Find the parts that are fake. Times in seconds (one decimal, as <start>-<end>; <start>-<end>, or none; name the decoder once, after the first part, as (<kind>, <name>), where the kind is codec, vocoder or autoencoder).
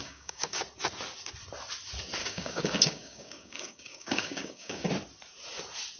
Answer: 0.0-0.6 (codec, DAC); 2.2-4.9